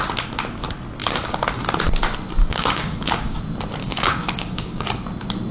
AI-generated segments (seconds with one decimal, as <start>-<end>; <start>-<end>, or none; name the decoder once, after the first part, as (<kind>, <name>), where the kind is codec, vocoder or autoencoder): 2.4-3.4 (codec, DAC); 3.8-4.9